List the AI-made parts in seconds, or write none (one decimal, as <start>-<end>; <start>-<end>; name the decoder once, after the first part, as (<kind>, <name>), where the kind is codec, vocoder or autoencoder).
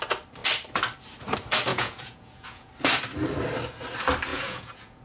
1.7-2.7 (vocoder, Vocos); 4.3-5.0